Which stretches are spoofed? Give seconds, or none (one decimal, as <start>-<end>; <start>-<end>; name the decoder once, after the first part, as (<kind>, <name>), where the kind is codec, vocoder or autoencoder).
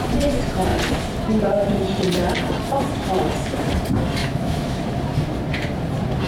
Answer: 4.2-4.8 (autoencoder, DAC-VAE)